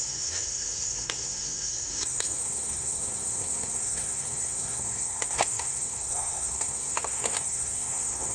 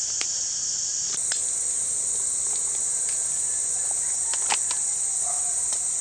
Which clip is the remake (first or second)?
first